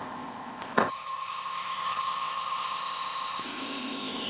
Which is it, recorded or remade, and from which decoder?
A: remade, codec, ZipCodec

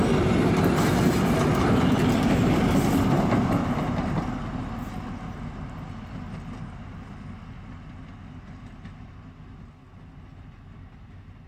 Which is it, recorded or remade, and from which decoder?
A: recorded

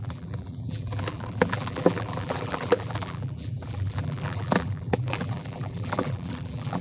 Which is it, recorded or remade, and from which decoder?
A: remade, vocoder, BigVGAN v2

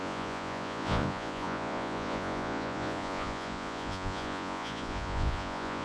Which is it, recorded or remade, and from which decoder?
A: remade, vocoder, Vocos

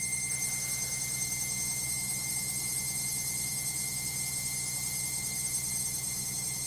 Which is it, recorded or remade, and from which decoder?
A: recorded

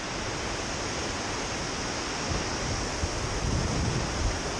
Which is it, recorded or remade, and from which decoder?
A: recorded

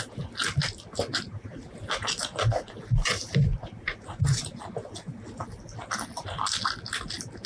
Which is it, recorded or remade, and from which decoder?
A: recorded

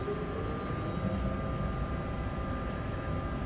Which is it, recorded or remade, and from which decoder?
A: recorded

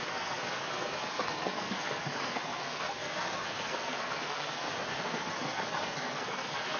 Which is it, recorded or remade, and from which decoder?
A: remade, codec, SNAC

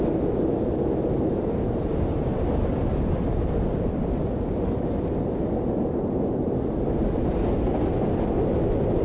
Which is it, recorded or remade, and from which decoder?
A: recorded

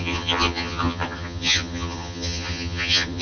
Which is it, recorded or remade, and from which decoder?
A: remade, vocoder, HiFi-GAN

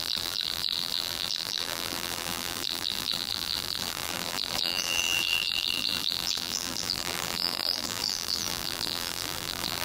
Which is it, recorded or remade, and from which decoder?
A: remade, vocoder, BigVGAN v2